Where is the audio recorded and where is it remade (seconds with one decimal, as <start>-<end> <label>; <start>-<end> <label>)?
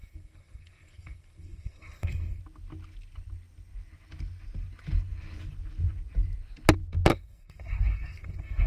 0.0-2.4 remade; 2.4-7.1 recorded; 7.1-8.7 remade